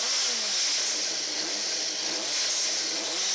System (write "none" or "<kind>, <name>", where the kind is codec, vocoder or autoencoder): none